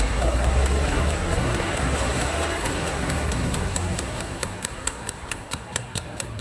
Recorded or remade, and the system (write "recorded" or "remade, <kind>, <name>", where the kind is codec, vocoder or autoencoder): remade, codec, SNAC